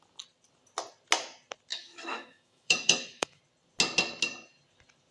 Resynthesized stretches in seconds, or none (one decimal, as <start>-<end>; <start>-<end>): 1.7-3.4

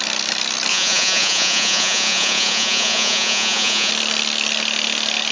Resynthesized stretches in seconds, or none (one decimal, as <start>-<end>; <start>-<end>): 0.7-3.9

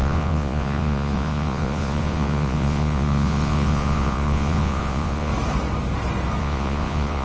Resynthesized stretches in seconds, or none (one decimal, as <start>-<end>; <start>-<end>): 0.0-5.3; 6.4-7.2